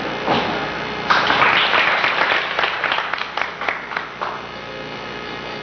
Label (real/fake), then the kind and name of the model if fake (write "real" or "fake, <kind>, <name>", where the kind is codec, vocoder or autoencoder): real